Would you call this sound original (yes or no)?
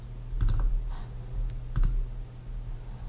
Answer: yes